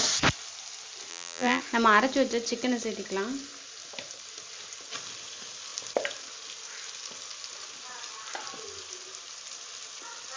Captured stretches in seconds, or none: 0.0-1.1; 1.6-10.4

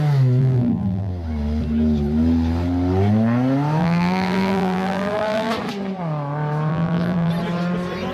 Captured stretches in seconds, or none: 0.0-0.4; 1.1-3.8; 5.5-6.7; 7.3-8.1